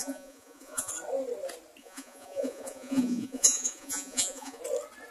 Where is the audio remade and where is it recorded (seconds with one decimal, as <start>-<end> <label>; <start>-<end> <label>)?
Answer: 0.0-0.9 remade; 0.9-1.8 recorded; 1.8-4.6 remade; 4.6-5.1 recorded